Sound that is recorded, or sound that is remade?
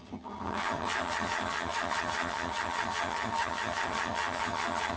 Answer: remade